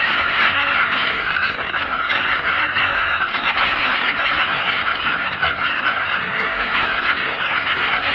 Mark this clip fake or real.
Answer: fake